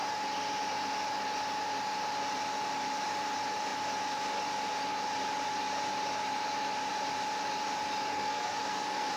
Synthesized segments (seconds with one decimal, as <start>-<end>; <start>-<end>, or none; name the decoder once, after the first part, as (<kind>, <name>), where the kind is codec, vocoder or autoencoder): 8.1-9.2 (codec, SNAC)